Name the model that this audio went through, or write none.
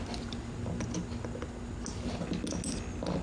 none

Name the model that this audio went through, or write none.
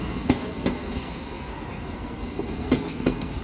codec, SNAC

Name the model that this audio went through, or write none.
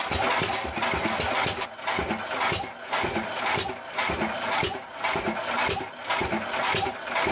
none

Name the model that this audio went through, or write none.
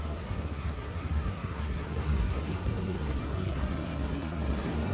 codec, SNAC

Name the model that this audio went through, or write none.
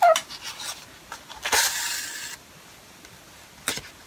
none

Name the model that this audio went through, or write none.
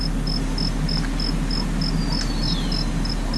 none